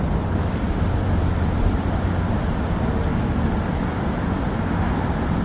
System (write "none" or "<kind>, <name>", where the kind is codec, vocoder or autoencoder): none